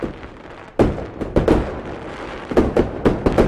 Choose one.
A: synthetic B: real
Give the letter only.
B